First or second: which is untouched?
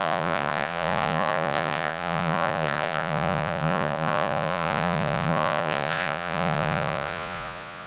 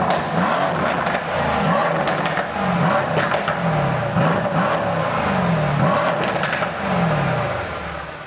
second